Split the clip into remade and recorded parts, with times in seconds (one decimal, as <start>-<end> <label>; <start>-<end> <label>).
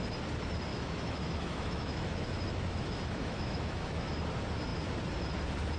0.0-0.7 recorded; 0.7-4.2 remade; 4.2-5.8 recorded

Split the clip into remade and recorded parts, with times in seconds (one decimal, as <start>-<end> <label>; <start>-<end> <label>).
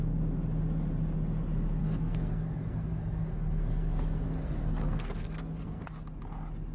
0.0-1.8 recorded; 1.8-5.8 remade; 5.8-6.7 recorded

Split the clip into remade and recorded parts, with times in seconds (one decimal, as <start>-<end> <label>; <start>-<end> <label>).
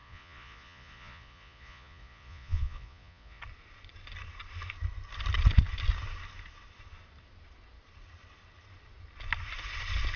0.0-3.4 remade; 3.4-10.2 recorded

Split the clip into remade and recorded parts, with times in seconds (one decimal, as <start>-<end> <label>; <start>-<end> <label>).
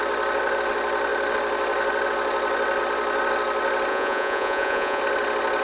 0.0-3.9 recorded; 3.9-5.0 remade; 5.0-5.6 recorded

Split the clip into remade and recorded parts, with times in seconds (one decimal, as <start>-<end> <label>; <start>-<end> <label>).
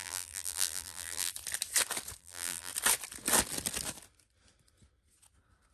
0.0-1.3 remade; 1.3-2.2 recorded; 2.2-2.7 remade; 2.7-5.7 recorded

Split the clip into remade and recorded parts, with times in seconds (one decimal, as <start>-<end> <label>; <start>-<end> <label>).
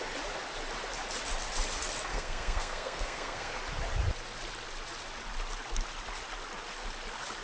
0.0-2.1 recorded; 2.1-3.6 remade; 3.6-7.4 recorded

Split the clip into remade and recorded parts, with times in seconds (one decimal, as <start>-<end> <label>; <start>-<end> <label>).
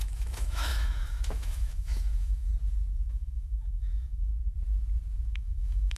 0.0-2.5 remade; 2.5-3.1 recorded; 3.1-4.3 remade; 4.3-5.3 recorded; 5.3-6.0 remade